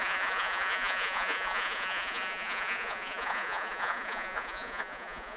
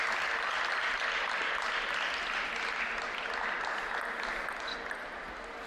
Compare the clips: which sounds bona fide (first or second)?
second